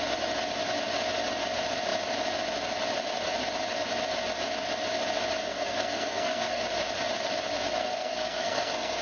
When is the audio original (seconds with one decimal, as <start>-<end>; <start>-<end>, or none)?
0.0-5.4; 6.6-7.8